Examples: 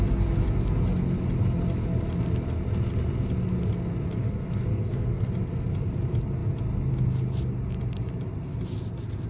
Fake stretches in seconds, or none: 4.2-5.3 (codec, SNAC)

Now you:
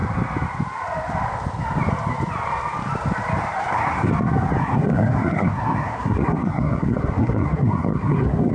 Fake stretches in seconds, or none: 3.6-4.1 (codec, SNAC); 4.6-8.5

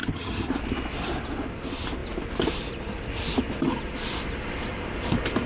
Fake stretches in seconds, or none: 0.0-0.5 (vocoder, HiFi-GAN)